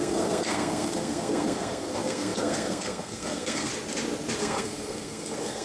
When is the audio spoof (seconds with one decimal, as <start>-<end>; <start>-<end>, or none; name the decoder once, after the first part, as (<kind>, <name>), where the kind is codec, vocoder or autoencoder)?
0.0-3.7 (codec, SNAC); 4.4-5.6